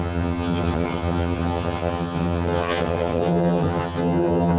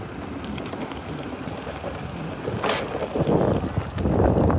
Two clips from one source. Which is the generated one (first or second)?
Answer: first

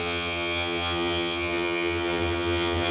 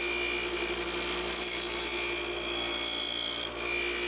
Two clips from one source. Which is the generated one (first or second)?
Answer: first